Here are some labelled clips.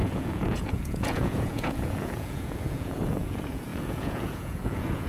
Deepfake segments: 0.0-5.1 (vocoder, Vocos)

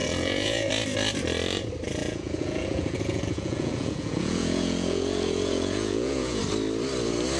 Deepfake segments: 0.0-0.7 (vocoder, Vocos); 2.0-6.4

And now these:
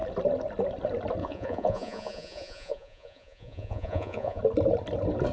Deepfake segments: 1.2-4.4 (vocoder, Vocos)

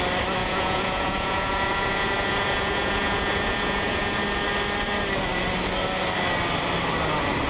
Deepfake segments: 0.4-4.2 (vocoder, Vocos)